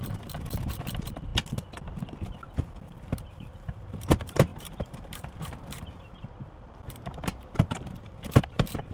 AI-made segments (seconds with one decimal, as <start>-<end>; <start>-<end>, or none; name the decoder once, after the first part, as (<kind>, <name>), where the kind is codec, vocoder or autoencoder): 0.0-1.3 (vocoder, BigVGAN v2); 3.0-8.9